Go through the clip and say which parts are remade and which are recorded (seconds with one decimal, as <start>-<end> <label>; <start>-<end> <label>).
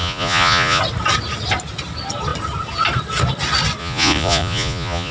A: 0.0-0.8 remade; 0.8-3.8 recorded; 3.8-5.1 remade